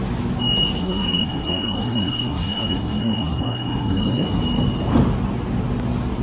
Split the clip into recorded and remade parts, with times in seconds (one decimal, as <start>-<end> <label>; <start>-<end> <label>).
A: 0.0-0.8 recorded; 0.8-4.4 remade; 4.4-6.2 recorded